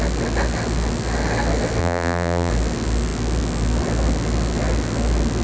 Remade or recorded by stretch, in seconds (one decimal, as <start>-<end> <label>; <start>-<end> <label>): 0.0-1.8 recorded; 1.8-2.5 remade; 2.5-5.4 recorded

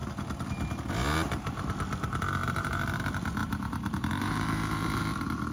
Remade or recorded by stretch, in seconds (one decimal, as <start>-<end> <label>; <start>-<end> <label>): 0.0-2.4 recorded; 2.4-3.0 remade; 3.0-3.4 recorded; 3.4-5.0 remade; 5.0-5.5 recorded

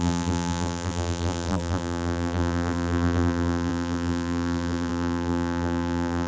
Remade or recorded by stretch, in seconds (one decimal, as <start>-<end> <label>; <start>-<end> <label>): 0.0-6.3 remade

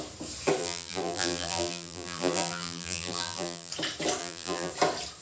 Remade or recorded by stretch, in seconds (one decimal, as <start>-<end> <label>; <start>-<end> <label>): 0.0-0.6 recorded; 0.6-3.7 remade; 3.7-4.2 recorded; 4.2-4.7 remade; 4.7-5.2 recorded